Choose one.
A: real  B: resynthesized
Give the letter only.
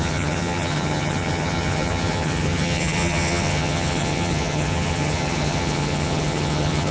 B